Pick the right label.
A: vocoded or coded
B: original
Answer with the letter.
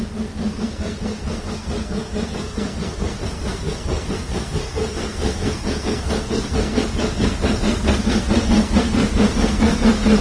A